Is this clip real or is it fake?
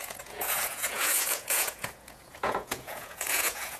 fake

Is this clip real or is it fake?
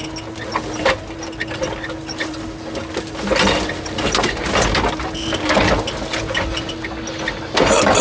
real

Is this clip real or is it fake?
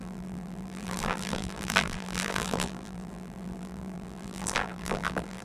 fake